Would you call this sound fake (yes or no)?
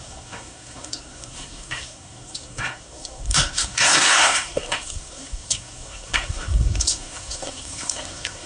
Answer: yes